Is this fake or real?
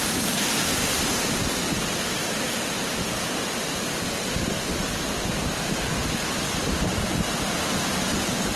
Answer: real